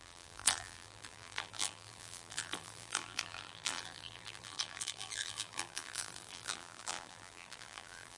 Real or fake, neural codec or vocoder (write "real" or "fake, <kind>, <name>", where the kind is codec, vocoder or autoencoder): fake, vocoder, BigVGAN v2